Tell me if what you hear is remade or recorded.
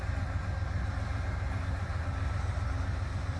recorded